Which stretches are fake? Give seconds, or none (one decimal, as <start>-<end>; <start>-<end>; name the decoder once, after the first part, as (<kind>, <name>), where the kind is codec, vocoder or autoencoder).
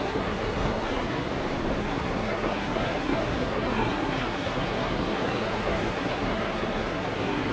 0.0-1.3 (codec, SNAC); 1.8-7.5